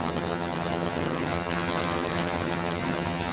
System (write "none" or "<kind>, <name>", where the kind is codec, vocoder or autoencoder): vocoder, HiFi-GAN